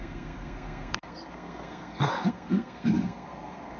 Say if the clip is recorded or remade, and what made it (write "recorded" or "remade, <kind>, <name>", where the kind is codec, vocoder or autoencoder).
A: remade, codec, SNAC